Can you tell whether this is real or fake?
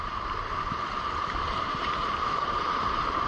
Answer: fake